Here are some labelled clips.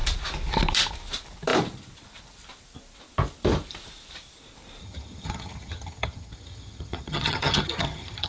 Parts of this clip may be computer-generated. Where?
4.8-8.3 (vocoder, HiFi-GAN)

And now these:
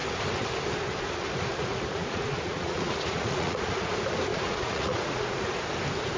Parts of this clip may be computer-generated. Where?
1.5-3.9 (vocoder, Vocos); 4.3-5.5

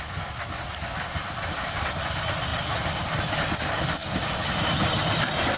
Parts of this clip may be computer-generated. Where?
none

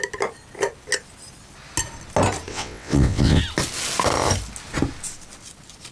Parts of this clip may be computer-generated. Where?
2.5-3.4 (vocoder, WaveNeXt)

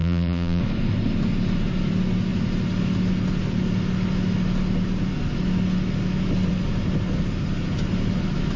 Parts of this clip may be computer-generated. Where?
0.0-0.6 (vocoder, BigVGAN v2)